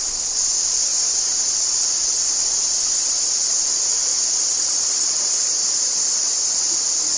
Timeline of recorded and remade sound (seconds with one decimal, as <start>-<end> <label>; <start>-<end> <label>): 0.0-7.2 recorded